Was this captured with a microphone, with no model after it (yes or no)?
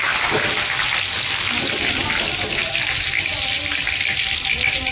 yes